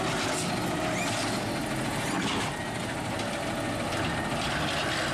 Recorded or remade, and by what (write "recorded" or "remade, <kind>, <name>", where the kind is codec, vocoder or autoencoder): recorded